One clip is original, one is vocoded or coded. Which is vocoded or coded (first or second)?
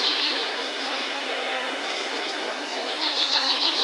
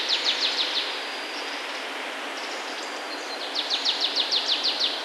first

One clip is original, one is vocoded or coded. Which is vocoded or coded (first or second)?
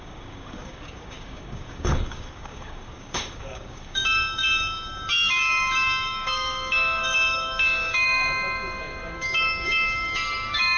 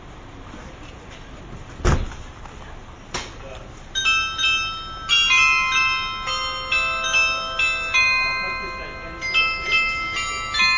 first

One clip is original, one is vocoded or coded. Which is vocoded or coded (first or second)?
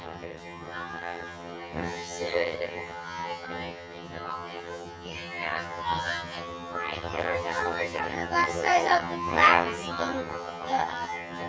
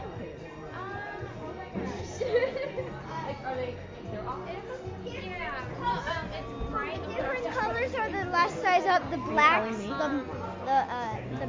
first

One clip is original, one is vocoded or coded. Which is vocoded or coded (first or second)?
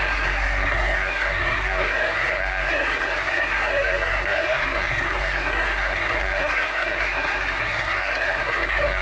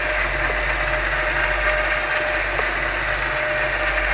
first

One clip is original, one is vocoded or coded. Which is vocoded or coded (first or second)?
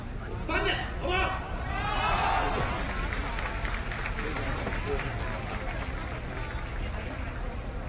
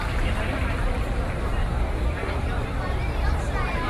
second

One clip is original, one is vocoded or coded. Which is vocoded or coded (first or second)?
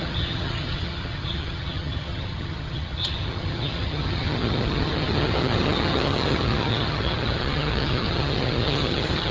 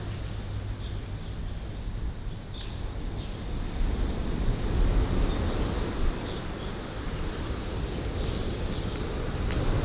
first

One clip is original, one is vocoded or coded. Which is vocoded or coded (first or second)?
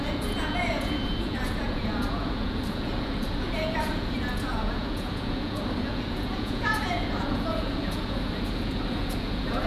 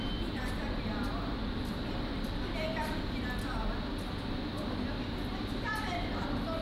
first